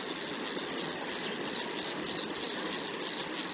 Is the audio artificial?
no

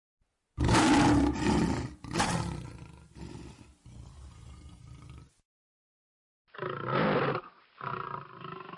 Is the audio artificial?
no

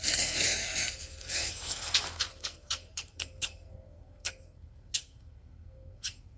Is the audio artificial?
yes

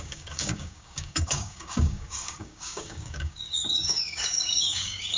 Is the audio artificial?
yes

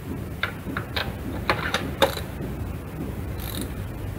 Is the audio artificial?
no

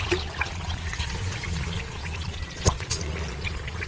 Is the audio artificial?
yes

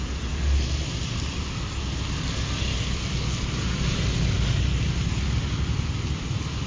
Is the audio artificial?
no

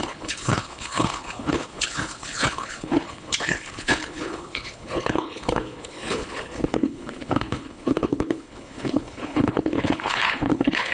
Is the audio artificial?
yes